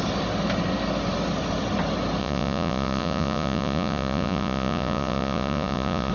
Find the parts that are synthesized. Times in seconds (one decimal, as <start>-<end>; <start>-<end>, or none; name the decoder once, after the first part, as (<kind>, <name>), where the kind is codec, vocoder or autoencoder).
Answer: 2.2-6.1 (vocoder, Vocos)